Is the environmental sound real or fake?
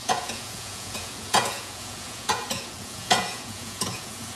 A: fake